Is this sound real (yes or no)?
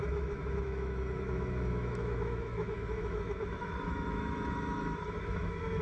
no